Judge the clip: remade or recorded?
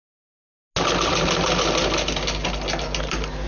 recorded